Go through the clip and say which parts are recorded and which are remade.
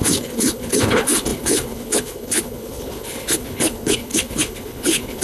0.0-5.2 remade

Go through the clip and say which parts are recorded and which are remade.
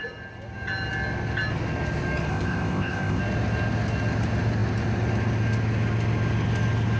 0.0-2.3 recorded; 2.3-3.2 remade; 3.2-7.0 recorded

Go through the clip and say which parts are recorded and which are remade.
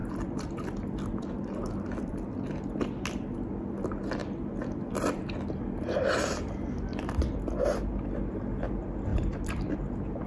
0.0-2.1 remade; 2.1-9.1 recorded; 9.1-9.7 remade; 9.7-10.3 recorded